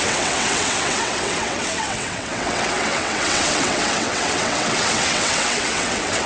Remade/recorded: remade